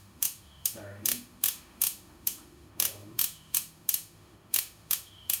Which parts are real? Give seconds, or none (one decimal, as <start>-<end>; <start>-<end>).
none